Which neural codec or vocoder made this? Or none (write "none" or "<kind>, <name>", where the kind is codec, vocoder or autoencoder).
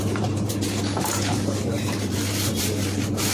vocoder, BigVGAN v2